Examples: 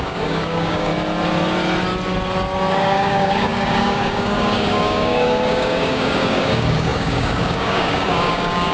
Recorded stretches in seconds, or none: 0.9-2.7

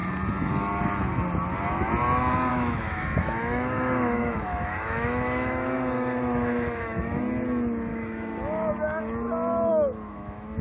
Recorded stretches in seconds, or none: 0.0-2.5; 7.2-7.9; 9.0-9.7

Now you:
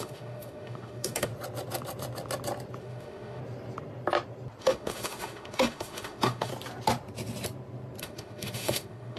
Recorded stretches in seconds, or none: 1.3-2.8; 3.4-4.6; 6.5-8.0

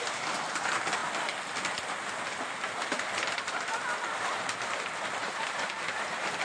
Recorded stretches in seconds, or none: 0.0-6.4

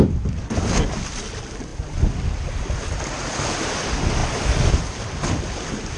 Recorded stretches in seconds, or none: 0.0-6.0